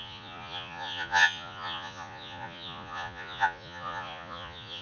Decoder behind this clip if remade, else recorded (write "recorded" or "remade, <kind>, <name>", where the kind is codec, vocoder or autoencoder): remade, vocoder, Vocos